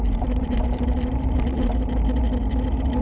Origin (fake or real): real